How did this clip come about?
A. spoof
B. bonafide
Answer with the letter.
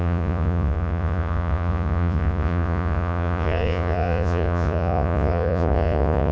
A